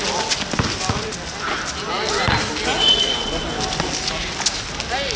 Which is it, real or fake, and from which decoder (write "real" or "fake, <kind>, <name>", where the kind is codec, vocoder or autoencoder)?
real